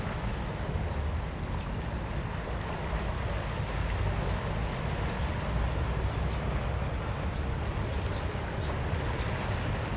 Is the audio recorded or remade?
recorded